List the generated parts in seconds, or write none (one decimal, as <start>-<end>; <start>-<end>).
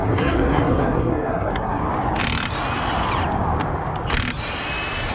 0.0-1.8